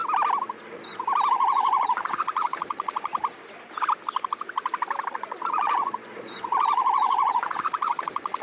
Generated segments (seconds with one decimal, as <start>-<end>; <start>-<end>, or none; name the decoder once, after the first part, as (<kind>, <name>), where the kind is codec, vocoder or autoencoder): 1.3-3.1 (vocoder, Vocos); 5.1-8.4